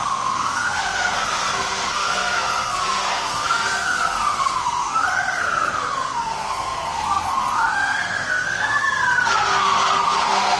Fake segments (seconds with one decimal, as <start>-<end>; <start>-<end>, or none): 0.0-10.6